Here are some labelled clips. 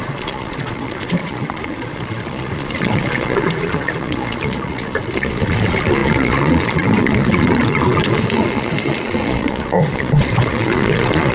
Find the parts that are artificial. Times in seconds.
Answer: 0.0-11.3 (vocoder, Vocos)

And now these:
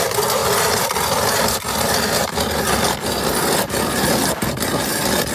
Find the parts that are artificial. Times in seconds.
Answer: none

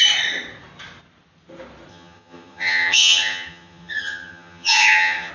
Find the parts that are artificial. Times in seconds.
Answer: 1.9-5.3 (vocoder, HiFi-GAN)

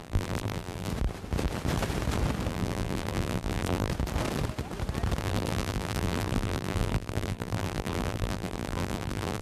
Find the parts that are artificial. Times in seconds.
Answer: 0.0-0.9 (vocoder, BigVGAN v2); 2.5-3.9; 5.2-9.4

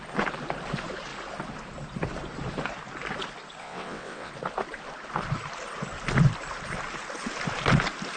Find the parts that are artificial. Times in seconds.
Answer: 3.6-4.3 (vocoder, WaveNeXt)

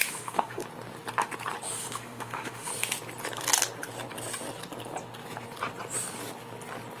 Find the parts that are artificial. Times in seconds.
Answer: 0.0-0.6 (autoencoder, DAC-VAE); 1.8-2.7

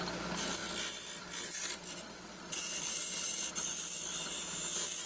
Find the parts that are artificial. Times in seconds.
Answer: 0.6-3.7 (vocoder, BigVGAN v2)

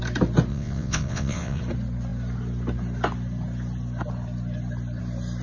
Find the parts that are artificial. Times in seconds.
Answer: 0.5-1.6 (vocoder, WaveNeXt)